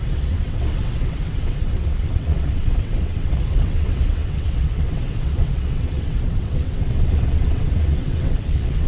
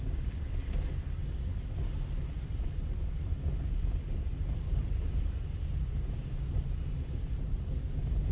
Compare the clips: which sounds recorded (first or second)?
second